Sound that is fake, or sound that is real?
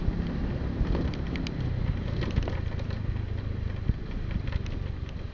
real